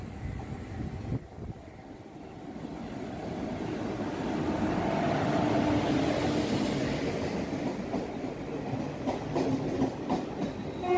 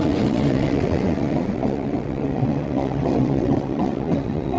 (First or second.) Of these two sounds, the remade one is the second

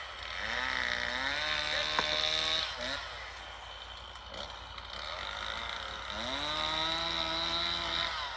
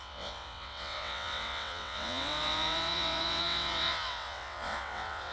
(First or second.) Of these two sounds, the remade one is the second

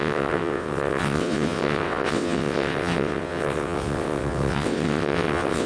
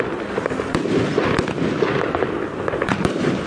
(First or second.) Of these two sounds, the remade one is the first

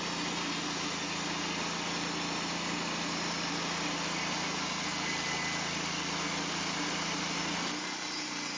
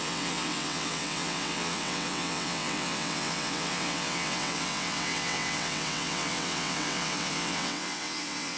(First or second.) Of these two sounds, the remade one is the second